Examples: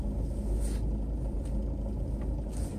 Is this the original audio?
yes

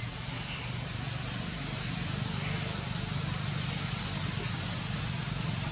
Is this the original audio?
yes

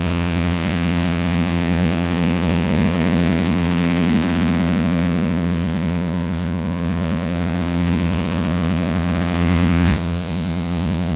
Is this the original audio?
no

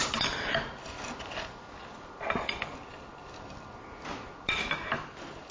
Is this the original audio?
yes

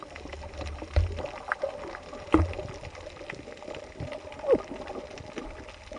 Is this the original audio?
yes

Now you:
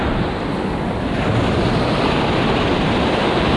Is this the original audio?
yes